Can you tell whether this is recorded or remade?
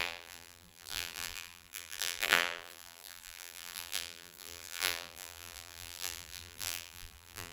remade